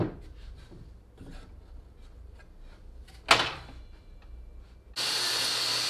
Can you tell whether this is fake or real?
real